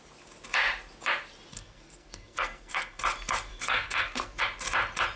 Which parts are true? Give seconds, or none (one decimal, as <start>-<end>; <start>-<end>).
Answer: 0.0-1.5; 3.0-3.5; 4.4-5.2